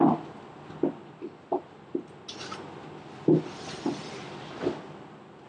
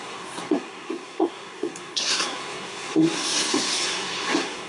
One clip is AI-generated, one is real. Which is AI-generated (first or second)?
second